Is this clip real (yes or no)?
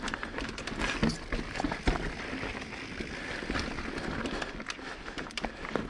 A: yes